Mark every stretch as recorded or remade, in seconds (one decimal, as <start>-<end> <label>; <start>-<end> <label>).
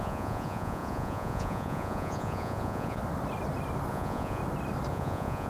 0.0-3.0 remade; 3.0-3.9 recorded; 3.9-4.4 remade; 4.4-4.9 recorded; 4.9-5.5 remade